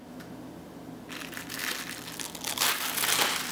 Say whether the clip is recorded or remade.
recorded